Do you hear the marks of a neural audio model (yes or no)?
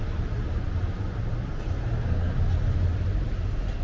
no